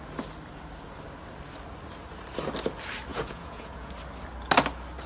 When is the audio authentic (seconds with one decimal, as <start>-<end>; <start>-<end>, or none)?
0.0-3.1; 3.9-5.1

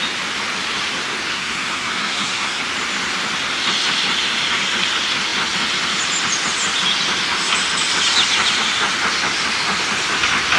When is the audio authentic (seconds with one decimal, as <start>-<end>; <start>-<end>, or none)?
0.0-1.3; 2.6-10.6

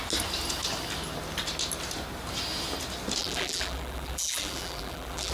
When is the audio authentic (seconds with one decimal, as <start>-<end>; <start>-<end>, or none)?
0.0-3.2